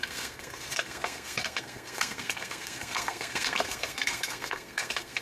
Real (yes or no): no